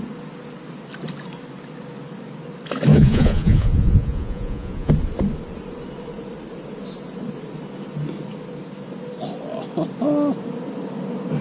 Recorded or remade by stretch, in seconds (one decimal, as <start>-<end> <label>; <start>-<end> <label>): 0.0-2.9 recorded; 2.9-4.9 remade; 4.9-11.4 recorded